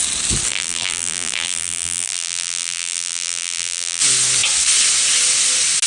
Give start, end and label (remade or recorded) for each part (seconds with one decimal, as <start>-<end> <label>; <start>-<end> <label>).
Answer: 0.0-0.5 recorded; 0.5-4.0 remade; 4.0-5.9 recorded